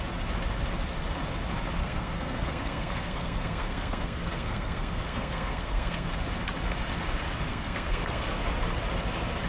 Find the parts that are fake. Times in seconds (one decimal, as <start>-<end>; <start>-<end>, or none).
1.8-6.1; 7.5-8.4